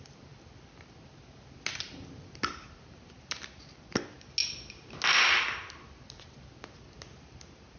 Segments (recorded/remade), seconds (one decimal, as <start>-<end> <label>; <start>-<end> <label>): 0.0-7.8 recorded

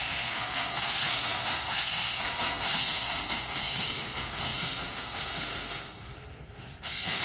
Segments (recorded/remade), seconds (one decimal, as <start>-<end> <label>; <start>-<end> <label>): 0.0-7.2 remade

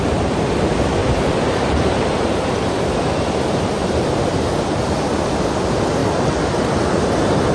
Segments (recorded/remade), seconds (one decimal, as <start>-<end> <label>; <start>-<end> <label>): 0.0-1.0 recorded; 1.0-5.3 remade; 5.3-7.5 recorded

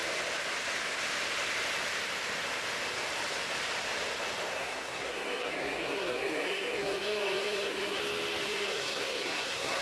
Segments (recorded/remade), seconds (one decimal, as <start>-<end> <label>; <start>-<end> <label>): 0.0-4.5 recorded; 4.5-8.0 remade; 8.0-8.4 recorded; 8.4-9.8 remade

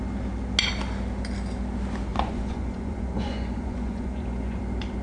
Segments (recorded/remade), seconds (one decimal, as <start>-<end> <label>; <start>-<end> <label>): 0.0-2.1 recorded; 2.1-4.6 remade; 4.6-5.0 recorded

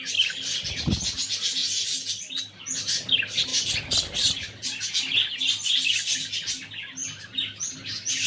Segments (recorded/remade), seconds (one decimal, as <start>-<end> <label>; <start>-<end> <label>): 0.0-8.3 recorded

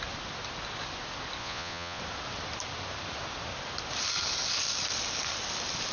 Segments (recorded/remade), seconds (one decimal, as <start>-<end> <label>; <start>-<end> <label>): 0.0-1.4 recorded; 1.4-2.0 remade; 2.0-5.9 recorded

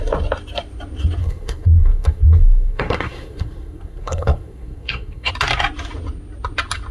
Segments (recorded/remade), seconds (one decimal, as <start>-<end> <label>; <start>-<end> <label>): 0.0-1.2 recorded; 1.2-5.3 remade; 5.3-6.9 recorded